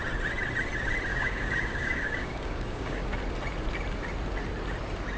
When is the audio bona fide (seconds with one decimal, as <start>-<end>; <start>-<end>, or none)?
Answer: 0.0-1.1; 3.0-5.2